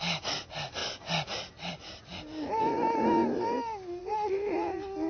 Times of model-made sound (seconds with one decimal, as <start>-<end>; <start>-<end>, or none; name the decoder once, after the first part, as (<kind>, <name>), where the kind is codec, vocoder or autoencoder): none